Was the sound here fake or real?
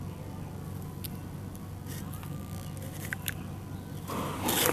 real